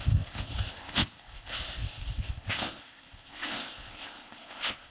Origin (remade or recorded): remade